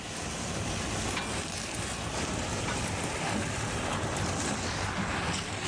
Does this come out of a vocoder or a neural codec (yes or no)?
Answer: no